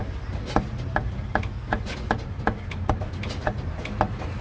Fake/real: real